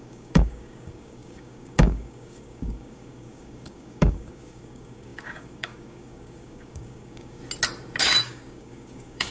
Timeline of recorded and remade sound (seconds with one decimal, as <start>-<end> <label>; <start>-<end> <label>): 0.0-7.4 remade; 7.4-8.0 recorded; 8.0-9.3 remade